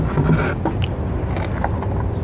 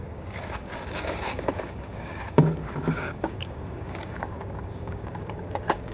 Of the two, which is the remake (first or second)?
second